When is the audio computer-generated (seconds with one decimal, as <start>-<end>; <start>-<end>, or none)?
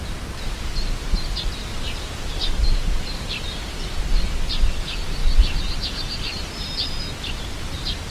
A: none